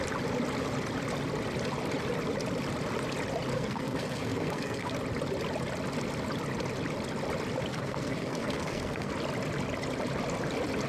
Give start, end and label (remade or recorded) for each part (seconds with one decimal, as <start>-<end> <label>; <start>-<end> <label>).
0.0-3.5 recorded; 3.5-4.9 remade; 4.9-7.7 recorded; 7.7-9.1 remade; 9.1-10.9 recorded